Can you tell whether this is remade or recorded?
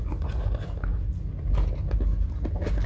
recorded